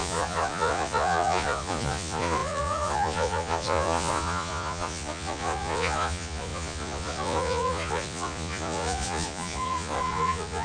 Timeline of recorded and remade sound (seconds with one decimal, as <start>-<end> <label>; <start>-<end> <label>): 0.0-10.6 remade